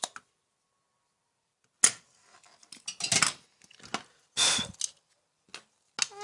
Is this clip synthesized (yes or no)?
no